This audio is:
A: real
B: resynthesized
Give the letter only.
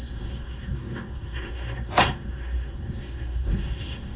B